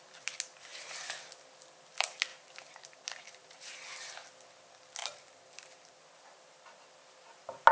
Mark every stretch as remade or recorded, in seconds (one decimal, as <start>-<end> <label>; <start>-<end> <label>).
0.0-2.3 recorded; 2.3-3.7 remade; 3.7-5.0 recorded; 5.0-6.0 remade; 6.0-7.7 recorded